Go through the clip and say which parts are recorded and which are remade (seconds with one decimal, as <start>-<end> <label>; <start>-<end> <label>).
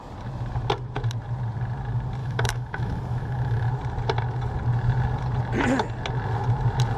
0.0-2.2 recorded; 2.2-3.7 remade; 3.7-7.0 recorded